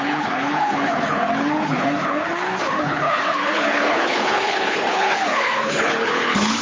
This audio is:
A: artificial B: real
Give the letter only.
A